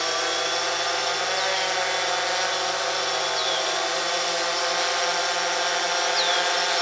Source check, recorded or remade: recorded